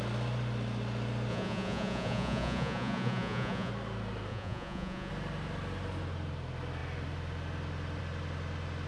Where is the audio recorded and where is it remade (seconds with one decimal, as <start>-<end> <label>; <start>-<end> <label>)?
0.0-1.3 recorded; 1.3-3.7 remade; 3.7-4.3 recorded; 4.3-5.1 remade; 5.1-8.9 recorded